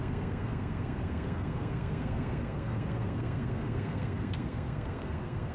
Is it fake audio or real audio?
fake